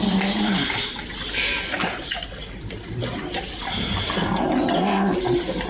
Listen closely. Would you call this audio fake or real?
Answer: real